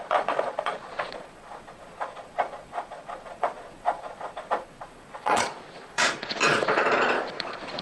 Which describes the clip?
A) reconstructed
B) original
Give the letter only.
A